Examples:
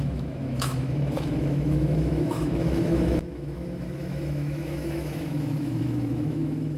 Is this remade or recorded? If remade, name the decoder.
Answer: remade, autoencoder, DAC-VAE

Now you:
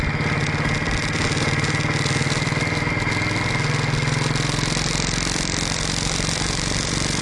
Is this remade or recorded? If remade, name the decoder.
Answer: recorded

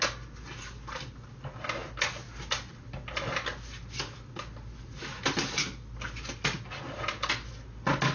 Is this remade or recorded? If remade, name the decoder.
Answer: recorded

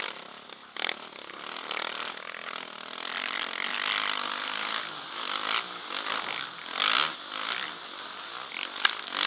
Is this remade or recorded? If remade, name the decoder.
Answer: recorded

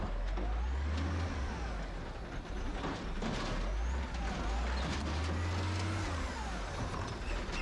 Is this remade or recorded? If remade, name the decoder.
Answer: recorded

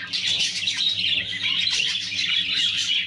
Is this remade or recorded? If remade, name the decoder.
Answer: recorded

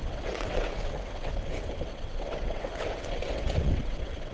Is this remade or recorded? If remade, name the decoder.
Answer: remade, vocoder, WaveNeXt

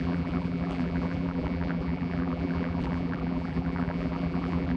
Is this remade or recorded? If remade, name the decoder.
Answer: remade, vocoder, BigVGAN v2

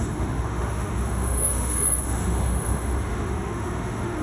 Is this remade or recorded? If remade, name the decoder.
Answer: remade, autoencoder, DAC-VAE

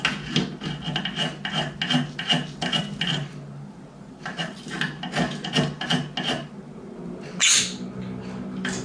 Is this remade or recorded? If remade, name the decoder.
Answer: recorded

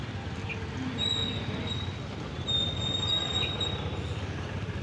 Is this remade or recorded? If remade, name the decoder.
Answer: recorded